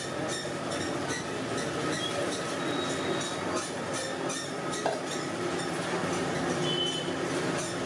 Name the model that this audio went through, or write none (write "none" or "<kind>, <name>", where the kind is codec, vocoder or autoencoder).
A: none